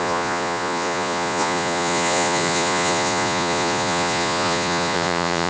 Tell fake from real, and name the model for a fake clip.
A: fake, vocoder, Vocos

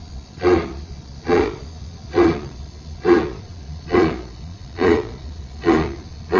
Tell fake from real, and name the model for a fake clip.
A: fake, vocoder, Vocos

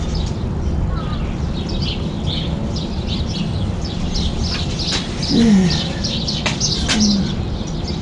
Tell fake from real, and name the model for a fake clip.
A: real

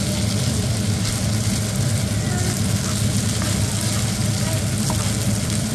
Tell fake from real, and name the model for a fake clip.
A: real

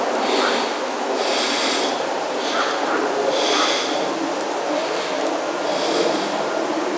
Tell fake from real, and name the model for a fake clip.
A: real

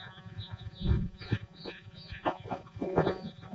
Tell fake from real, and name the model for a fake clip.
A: fake, vocoder, Vocos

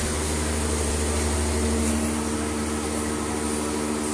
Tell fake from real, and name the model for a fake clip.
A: real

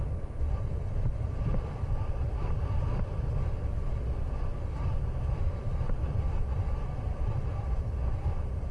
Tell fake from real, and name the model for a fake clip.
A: real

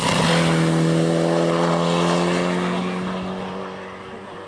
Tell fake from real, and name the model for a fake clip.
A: real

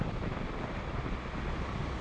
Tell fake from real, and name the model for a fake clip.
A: real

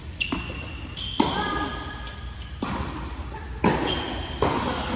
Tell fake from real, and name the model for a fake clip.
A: real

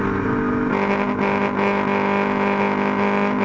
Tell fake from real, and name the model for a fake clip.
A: real